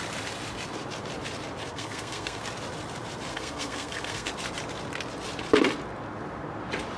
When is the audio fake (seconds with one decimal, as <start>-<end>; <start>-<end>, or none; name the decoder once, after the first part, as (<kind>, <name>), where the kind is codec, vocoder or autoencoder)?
1.6-2.4 (codec, SNAC); 3.3-4.3